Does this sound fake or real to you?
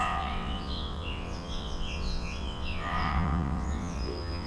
fake